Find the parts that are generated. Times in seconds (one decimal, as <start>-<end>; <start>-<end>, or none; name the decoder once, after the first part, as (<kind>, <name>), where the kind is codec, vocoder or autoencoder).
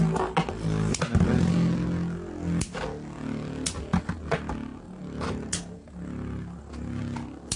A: none